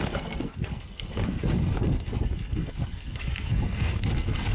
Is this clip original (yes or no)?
no